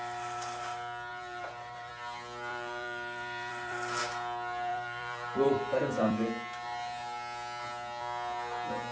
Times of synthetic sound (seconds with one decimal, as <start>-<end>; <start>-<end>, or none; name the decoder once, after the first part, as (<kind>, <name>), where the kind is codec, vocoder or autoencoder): 1.1-1.9 (vocoder, BigVGAN v2); 2.5-4.0; 4.7-5.8